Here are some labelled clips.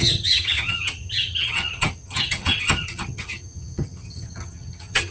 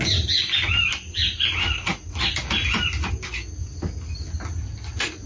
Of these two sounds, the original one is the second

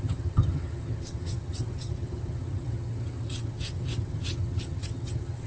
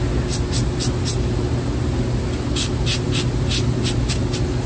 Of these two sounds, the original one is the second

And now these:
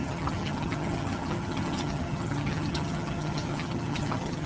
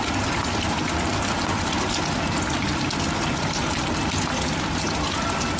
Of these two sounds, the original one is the second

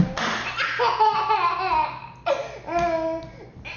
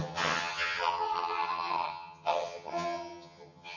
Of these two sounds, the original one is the first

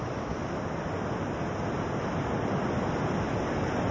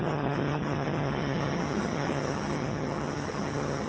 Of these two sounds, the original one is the first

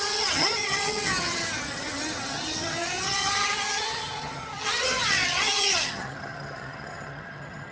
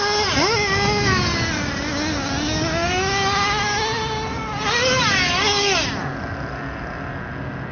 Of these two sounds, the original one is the second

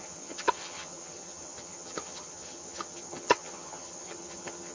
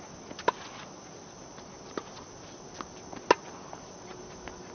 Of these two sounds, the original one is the second